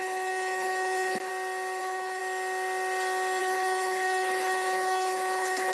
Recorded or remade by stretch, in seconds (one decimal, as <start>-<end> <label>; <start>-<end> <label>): 0.0-1.3 remade; 1.3-1.8 recorded; 1.8-2.2 remade; 2.2-3.4 recorded; 3.4-5.7 remade

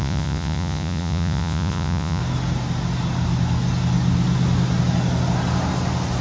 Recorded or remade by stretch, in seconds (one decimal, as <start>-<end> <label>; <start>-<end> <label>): 0.0-2.2 remade; 2.2-6.2 recorded

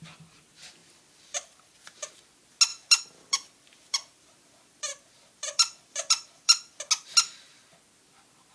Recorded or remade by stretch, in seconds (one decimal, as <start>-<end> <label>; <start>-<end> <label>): 0.0-0.8 recorded; 0.8-2.1 remade; 2.1-2.7 recorded; 2.7-6.7 remade; 6.7-8.5 recorded

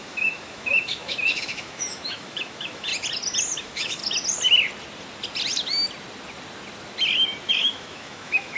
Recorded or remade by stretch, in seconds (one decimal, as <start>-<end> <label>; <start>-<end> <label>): 0.0-2.9 remade; 2.9-3.6 recorded; 3.6-4.0 remade; 4.0-7.5 recorded; 7.5-8.6 remade

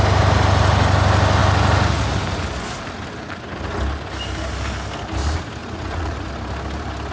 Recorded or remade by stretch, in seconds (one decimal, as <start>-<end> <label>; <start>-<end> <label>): 0.0-5.6 recorded; 5.6-6.3 remade; 6.3-7.1 recorded